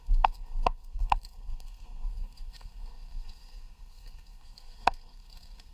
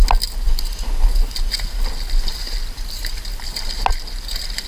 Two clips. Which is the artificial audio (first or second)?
first